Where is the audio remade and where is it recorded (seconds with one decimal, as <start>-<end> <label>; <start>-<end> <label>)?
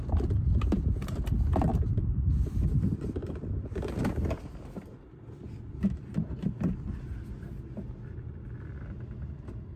0.0-9.8 recorded